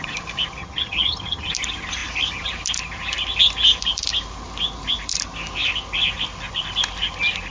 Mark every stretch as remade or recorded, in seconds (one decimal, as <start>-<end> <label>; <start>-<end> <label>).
0.0-0.6 recorded; 0.6-1.5 remade; 1.5-7.5 recorded